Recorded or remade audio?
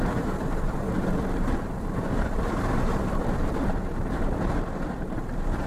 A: remade